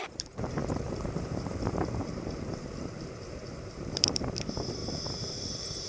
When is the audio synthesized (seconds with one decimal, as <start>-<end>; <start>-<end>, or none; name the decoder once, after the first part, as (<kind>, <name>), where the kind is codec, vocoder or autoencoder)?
0.0-4.8 (vocoder, BigVGAN v2); 5.3-5.9